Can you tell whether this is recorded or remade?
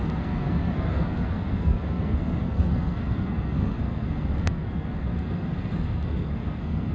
remade